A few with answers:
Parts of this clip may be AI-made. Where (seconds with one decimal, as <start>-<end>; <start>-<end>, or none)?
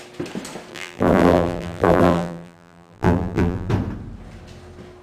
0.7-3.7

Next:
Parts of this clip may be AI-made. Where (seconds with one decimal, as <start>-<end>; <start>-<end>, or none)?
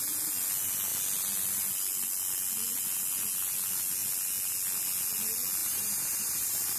5.6-6.8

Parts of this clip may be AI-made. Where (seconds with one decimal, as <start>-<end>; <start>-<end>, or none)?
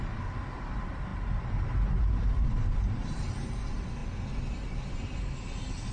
1.1-2.9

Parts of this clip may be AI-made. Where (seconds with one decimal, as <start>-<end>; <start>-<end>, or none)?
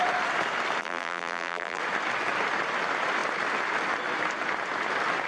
0.8-1.8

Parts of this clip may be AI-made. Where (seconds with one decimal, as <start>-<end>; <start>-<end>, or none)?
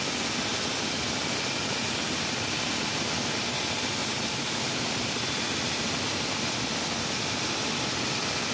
4.0-6.0